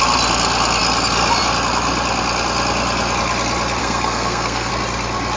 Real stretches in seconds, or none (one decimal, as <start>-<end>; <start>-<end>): 0.0-3.8; 4.7-5.4